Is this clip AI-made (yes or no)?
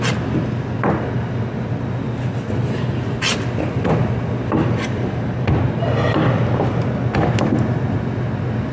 no